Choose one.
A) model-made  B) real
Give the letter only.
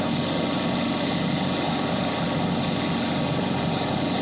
B